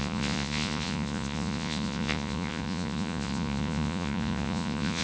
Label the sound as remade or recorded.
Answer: remade